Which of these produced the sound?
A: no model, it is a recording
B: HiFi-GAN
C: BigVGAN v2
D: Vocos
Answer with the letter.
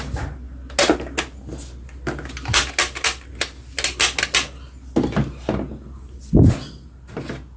A